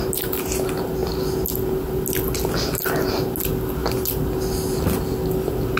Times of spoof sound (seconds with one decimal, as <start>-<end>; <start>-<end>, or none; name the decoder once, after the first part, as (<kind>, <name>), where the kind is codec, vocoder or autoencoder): none